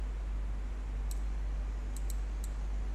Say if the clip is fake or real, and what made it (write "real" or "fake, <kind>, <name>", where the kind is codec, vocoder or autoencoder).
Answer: real